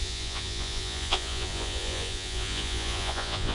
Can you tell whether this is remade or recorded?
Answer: remade